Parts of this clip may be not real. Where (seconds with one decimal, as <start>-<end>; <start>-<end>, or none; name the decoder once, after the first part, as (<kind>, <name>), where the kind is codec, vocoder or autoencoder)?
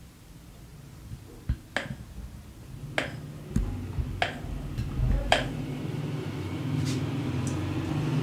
0.0-0.7 (vocoder, BigVGAN v2); 5.2-8.2